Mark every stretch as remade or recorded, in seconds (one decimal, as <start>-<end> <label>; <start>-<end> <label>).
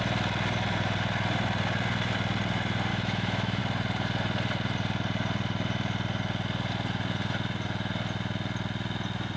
0.0-2.9 recorded; 2.9-3.6 remade; 3.6-9.4 recorded